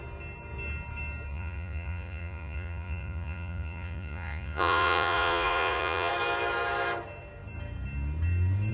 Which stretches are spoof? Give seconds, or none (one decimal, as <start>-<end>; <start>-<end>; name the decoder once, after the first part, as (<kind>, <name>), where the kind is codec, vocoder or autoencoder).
1.3-6.1 (vocoder, Vocos)